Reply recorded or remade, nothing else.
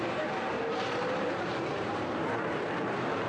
remade